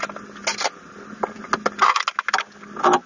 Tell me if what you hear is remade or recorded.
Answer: recorded